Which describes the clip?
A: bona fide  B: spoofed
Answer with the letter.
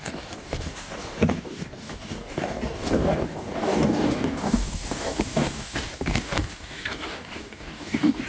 B